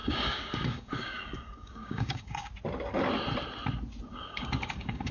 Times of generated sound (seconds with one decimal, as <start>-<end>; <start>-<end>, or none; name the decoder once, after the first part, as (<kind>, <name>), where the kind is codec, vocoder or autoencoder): 0.0-2.5 (codec, DAC); 4.1-5.1